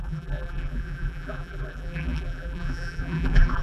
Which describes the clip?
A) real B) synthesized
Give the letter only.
B